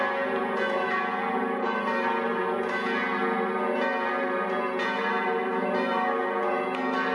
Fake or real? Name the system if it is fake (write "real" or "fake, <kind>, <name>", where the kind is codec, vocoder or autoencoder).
real